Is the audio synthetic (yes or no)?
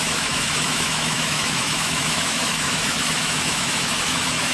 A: yes